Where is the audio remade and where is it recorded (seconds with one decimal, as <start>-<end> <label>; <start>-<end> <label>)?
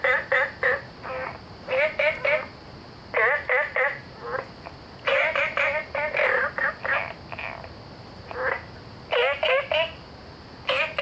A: 0.0-11.0 recorded